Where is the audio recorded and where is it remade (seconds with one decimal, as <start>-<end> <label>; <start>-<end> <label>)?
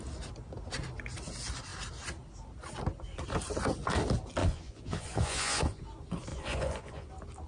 0.0-4.4 recorded; 4.4-5.8 remade; 5.8-6.3 recorded; 6.3-7.1 remade; 7.1-7.5 recorded